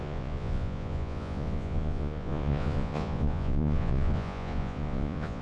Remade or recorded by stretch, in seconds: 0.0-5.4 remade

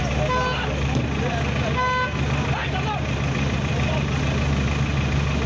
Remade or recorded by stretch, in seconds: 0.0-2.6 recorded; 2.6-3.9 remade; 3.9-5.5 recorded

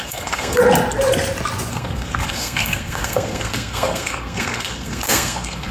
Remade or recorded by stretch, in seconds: 0.0-0.6 remade; 0.6-1.7 recorded; 1.7-5.7 remade